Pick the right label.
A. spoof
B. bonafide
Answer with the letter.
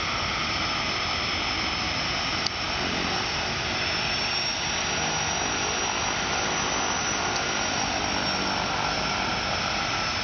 B